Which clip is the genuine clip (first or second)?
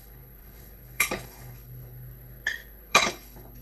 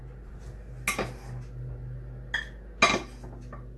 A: second